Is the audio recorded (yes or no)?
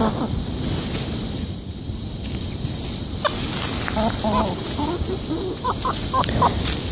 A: yes